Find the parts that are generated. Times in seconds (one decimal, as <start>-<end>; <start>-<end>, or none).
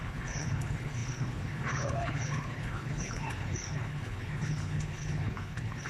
0.0-5.9